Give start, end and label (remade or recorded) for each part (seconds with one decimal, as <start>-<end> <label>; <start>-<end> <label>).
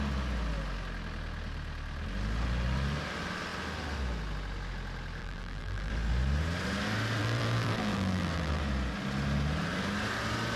0.0-5.2 recorded; 5.2-5.9 remade; 5.9-7.2 recorded; 7.2-8.6 remade; 8.6-10.6 recorded